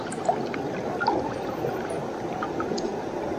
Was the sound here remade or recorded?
recorded